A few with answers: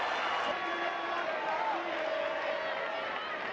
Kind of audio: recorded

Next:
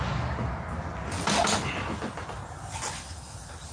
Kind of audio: recorded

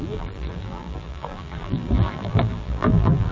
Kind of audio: remade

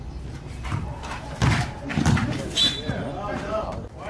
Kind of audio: remade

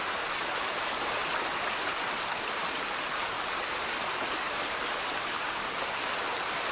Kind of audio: recorded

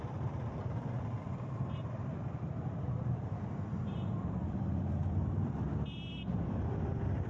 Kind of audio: remade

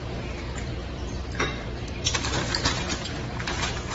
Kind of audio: remade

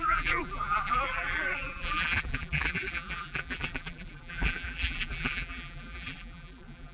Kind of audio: remade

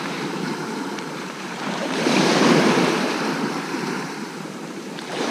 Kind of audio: remade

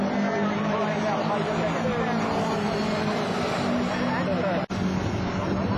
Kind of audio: recorded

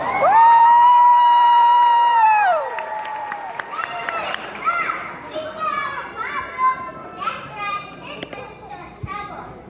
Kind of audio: remade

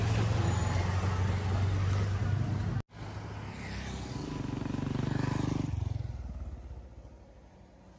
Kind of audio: recorded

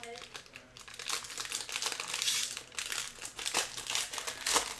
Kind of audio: recorded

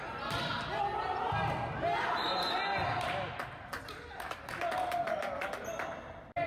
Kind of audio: recorded